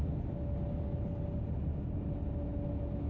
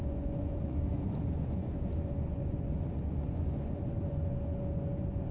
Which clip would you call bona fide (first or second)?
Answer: first